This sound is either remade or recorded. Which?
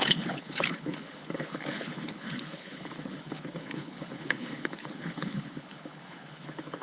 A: remade